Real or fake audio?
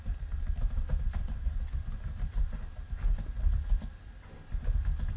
real